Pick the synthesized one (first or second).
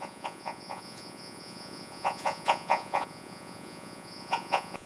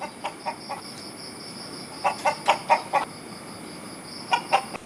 first